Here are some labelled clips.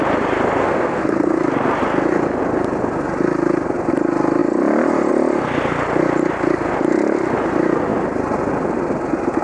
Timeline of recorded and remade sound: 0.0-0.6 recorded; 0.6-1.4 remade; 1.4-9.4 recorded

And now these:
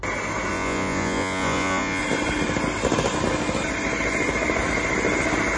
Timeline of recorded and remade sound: 0.0-0.5 recorded; 0.5-2.0 remade; 2.0-5.6 recorded

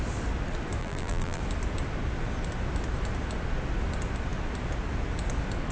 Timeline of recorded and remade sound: 0.0-0.8 recorded; 0.8-1.4 remade; 1.4-5.7 recorded

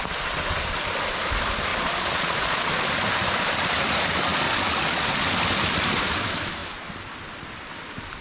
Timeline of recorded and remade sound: 0.0-1.7 recorded; 1.7-2.7 remade; 2.7-8.2 recorded

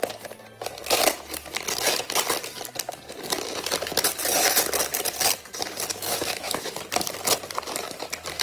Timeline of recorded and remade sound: 0.0-5.9 recorded; 5.9-6.7 remade; 6.7-8.4 recorded

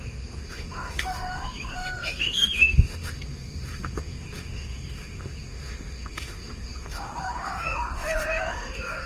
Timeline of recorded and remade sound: 0.0-9.1 remade

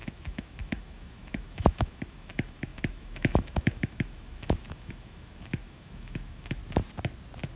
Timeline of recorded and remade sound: 0.0-6.6 remade; 6.6-7.6 recorded